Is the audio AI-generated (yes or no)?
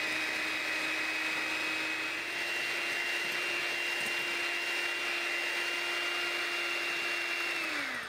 no